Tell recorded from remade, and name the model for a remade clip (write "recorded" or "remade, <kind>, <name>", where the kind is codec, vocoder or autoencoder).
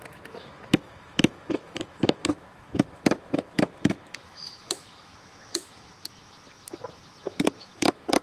remade, autoencoder, DAC-VAE